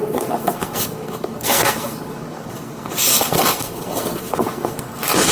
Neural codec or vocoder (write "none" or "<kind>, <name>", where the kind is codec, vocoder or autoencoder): codec, SNAC